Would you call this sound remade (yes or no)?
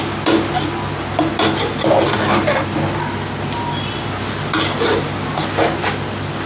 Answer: no